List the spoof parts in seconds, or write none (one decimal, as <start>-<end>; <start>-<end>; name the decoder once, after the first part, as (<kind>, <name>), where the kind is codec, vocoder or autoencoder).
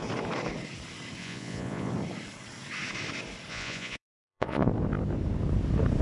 1.2-1.9 (vocoder, Vocos); 3.5-4.7